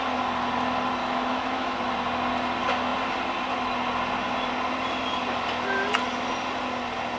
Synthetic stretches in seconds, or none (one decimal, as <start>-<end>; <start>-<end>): 1.0-1.9